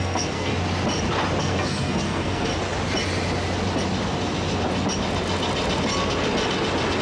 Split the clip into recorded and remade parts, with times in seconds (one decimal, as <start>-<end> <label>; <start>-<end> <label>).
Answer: 0.0-0.5 remade; 0.5-1.4 recorded; 1.4-2.5 remade; 2.5-7.0 recorded